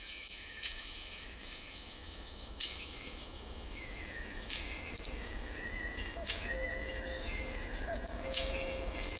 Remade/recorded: remade